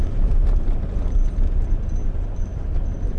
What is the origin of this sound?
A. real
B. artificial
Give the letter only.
B